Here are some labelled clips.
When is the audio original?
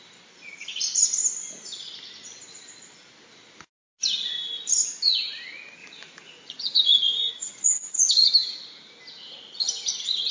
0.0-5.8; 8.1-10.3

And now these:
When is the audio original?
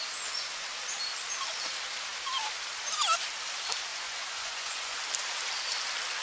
0.0-3.9; 5.0-6.2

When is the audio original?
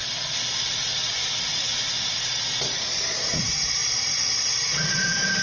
0.0-1.1; 1.7-2.8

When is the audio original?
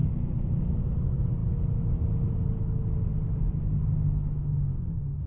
0.0-5.3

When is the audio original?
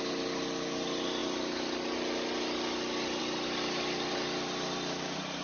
0.0-5.4